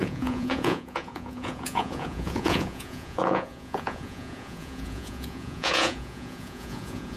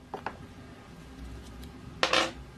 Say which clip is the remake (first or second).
first